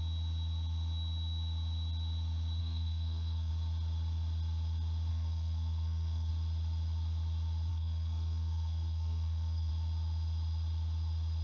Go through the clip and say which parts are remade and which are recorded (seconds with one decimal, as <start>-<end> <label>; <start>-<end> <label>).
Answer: 0.0-2.6 recorded; 2.6-3.5 remade; 3.5-5.1 recorded; 5.1-6.3 remade; 6.3-7.7 recorded; 7.7-9.7 remade; 9.7-11.4 recorded